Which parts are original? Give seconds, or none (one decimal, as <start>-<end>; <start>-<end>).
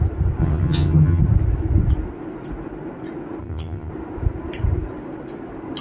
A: 0.0-0.4; 1.2-3.4; 3.9-5.8